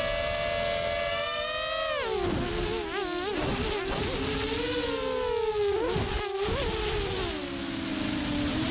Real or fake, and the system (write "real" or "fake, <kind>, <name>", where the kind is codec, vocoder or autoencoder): real